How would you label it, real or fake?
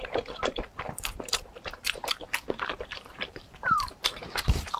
fake